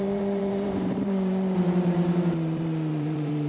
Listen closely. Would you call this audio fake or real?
fake